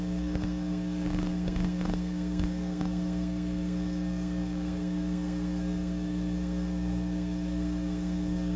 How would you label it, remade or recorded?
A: remade